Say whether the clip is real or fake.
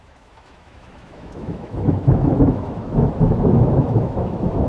fake